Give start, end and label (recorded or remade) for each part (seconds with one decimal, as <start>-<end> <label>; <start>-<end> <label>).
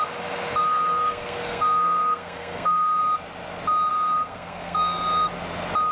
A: 0.0-0.6 recorded; 0.6-3.0 remade; 3.0-3.9 recorded; 3.9-5.3 remade; 5.3-5.9 recorded